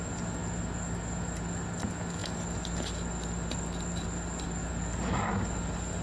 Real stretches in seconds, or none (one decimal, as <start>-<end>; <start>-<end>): 0.0-6.0